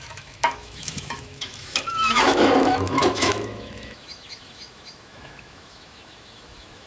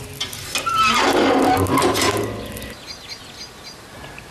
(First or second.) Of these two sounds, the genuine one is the second